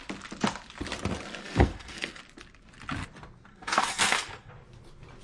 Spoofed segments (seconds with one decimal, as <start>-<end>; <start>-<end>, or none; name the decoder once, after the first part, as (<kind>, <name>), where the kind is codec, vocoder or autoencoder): 1.4-2.2 (codec, SNAC); 3.5-4.5